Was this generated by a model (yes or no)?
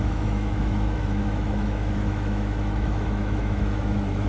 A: yes